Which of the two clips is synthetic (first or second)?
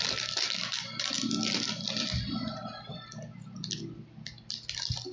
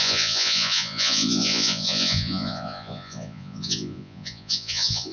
second